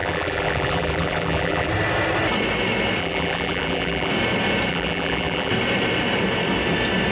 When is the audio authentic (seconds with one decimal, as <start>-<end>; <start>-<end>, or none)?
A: 1.7-3.0; 4.1-4.7; 5.5-7.1

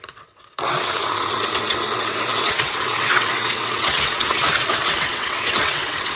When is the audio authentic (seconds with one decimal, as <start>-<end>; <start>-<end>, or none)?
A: none